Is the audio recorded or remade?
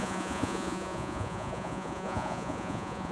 remade